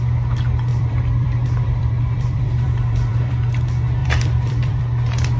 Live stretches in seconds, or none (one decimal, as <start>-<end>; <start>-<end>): 0.0-0.7; 3.3-4.0; 4.8-5.4